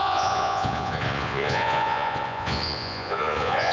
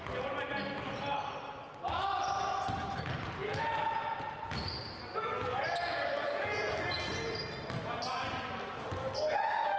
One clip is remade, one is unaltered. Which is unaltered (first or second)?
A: second